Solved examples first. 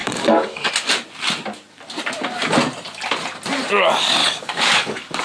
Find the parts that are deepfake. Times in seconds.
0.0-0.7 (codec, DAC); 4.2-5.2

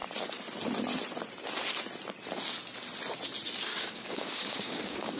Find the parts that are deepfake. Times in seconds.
3.7-5.2 (codec, DAC)

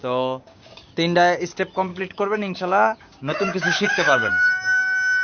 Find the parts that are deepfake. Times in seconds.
0.0-0.9 (codec, DAC); 1.9-4.3

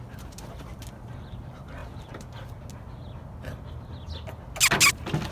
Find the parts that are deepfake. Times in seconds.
none

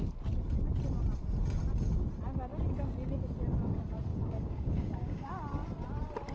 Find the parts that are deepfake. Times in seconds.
4.1-5.3 (codec, DAC)

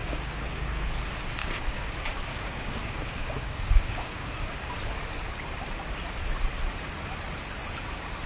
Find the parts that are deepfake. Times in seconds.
0.0-0.9 (codec, DAC); 1.4-1.9; 2.3-4.3

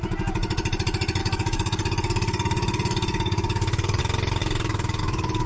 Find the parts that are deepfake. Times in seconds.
1.2-4.0 (codec, DAC)

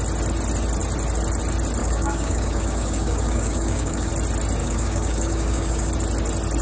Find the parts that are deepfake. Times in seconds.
1.8-4.1 (codec, DAC); 4.6-5.9